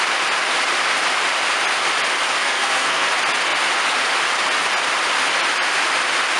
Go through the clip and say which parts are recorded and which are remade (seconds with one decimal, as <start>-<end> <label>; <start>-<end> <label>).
0.0-2.4 recorded; 2.4-3.1 remade; 3.1-6.4 recorded